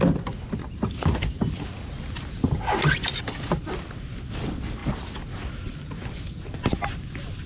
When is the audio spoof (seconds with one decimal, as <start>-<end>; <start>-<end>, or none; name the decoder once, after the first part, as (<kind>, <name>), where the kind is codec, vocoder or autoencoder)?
none